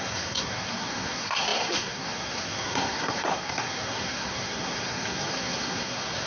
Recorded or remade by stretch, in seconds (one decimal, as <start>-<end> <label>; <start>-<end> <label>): 0.0-6.3 remade